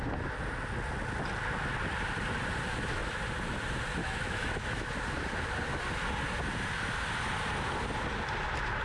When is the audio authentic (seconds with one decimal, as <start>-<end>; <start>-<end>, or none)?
0.0-4.0; 4.9-8.8